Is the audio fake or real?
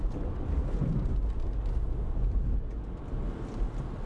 real